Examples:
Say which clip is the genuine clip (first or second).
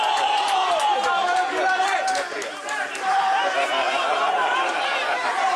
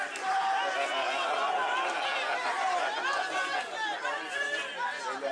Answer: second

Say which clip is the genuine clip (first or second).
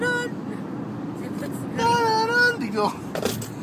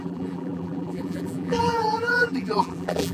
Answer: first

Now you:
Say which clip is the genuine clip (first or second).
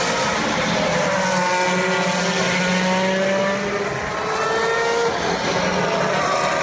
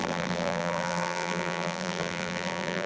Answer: first